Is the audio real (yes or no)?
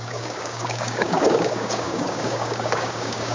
no